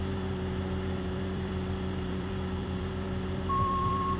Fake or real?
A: fake